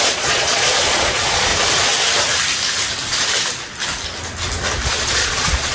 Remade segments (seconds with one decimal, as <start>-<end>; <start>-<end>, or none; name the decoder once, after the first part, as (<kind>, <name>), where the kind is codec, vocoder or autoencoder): 0.0-1.5 (vocoder, Vocos); 4.9-5.7